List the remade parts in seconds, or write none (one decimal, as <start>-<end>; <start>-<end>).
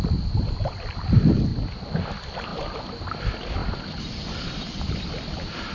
none